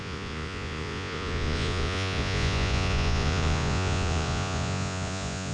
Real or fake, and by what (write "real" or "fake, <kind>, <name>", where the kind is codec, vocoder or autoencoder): fake, vocoder, Vocos